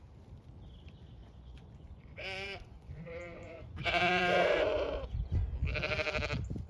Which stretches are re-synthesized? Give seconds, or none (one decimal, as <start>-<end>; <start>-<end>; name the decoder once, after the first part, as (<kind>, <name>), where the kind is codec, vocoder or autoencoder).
1.2-5.2 (vocoder, Vocos)